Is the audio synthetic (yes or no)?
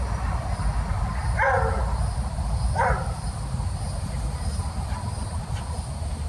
no